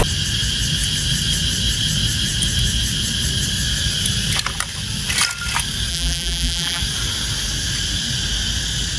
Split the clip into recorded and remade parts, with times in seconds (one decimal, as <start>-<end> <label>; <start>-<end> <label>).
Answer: 0.0-5.9 recorded; 5.9-6.8 remade; 6.8-9.0 recorded